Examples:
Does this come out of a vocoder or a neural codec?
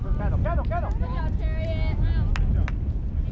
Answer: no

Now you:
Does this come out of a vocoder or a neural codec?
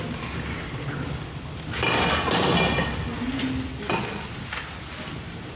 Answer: no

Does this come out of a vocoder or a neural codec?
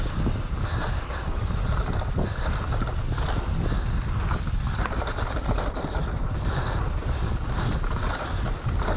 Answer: no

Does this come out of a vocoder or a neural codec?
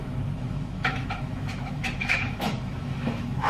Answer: yes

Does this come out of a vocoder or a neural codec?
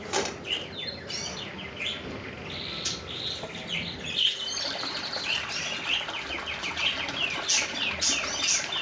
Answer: no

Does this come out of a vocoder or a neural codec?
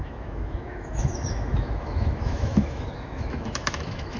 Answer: yes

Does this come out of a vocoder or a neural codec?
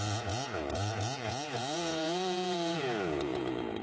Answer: yes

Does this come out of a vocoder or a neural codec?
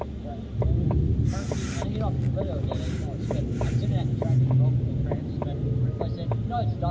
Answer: no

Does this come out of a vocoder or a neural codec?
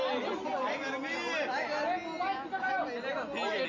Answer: no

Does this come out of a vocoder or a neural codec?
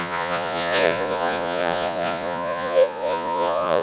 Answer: yes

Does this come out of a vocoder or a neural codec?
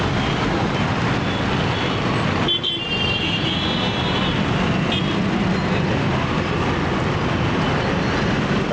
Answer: no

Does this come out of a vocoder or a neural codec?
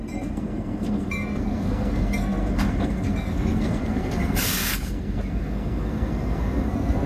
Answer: yes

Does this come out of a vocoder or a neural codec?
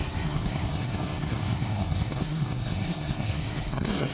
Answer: yes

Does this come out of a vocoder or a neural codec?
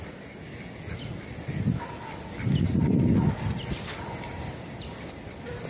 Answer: no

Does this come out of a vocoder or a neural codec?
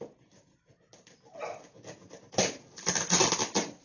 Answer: no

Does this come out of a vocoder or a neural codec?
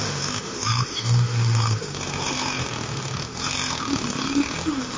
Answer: yes